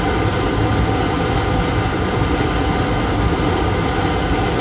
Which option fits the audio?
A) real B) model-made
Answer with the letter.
A